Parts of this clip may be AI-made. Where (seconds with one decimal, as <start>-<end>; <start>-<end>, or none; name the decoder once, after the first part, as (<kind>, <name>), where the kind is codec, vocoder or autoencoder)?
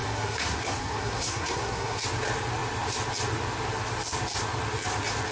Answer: 0.0-2.0 (codec, SNAC)